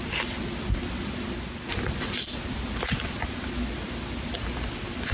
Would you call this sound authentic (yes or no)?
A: yes